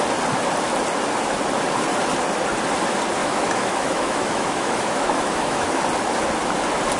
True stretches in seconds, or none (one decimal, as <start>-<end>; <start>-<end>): 0.0-3.2; 5.8-7.0